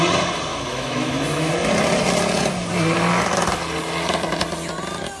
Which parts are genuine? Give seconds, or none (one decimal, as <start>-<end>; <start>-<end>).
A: 0.0-0.5; 1.5-5.2